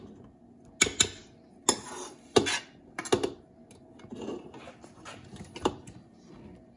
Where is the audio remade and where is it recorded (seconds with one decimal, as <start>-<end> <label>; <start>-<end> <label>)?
0.0-5.1 recorded; 5.1-6.3 remade; 6.3-6.8 recorded